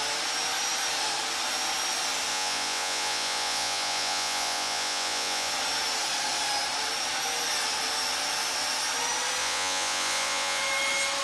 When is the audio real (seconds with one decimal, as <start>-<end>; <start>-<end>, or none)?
0.0-2.3; 5.5-9.4; 10.6-11.2